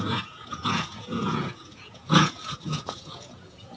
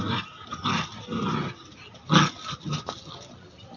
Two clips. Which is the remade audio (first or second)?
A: first